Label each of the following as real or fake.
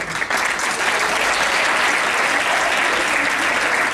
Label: real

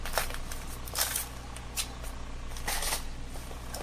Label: real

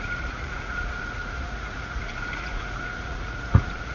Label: fake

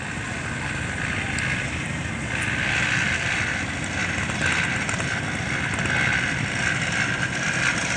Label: real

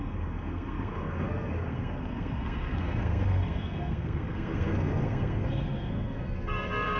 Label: fake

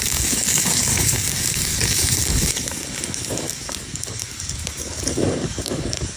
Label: fake